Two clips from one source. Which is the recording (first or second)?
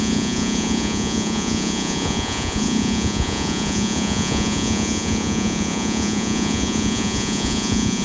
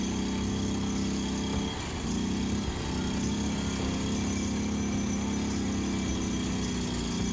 second